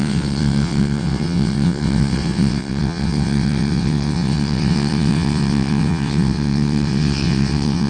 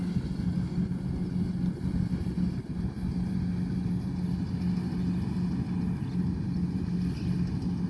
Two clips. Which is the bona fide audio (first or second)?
second